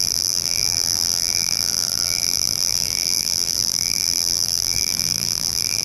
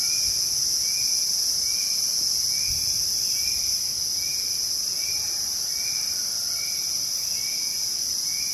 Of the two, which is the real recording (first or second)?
second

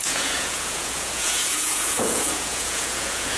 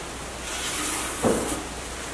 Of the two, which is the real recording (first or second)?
second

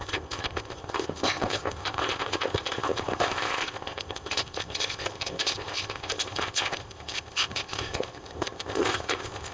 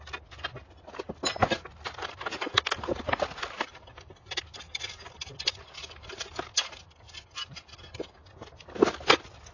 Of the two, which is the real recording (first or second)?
second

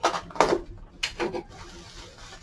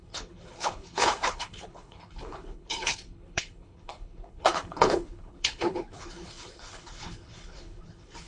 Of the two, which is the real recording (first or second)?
first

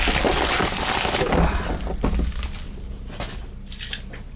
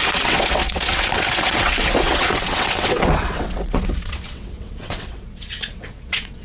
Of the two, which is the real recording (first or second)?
first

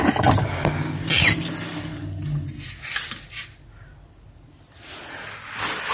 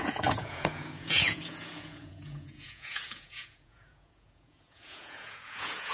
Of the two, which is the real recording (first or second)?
first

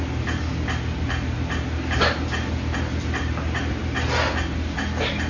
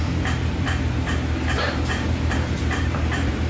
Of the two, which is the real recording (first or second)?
first